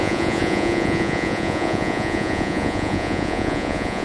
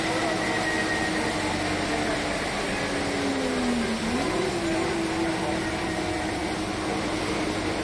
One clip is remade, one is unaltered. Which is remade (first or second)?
first